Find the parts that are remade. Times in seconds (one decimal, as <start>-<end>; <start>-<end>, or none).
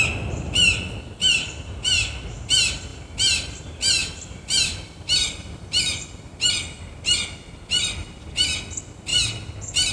none